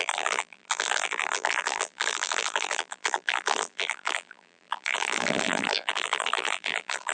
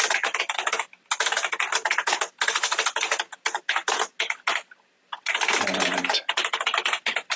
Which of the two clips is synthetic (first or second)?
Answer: first